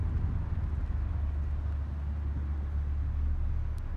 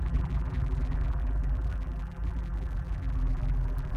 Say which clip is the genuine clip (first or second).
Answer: first